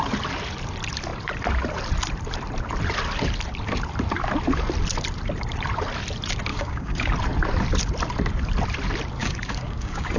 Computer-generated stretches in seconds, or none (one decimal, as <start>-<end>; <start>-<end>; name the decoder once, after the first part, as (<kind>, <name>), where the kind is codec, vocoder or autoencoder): 6.5-7.1 (codec, DAC); 9.2-10.2